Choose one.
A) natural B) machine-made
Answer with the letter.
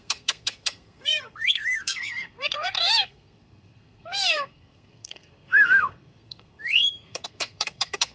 B